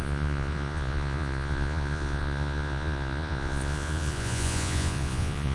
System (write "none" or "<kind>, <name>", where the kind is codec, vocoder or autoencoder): vocoder, Vocos